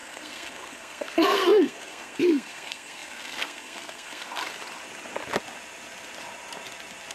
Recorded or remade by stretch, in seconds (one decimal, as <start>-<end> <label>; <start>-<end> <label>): 0.0-4.4 remade; 4.4-7.1 recorded